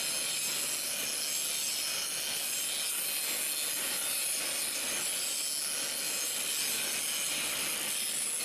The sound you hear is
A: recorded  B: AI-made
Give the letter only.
A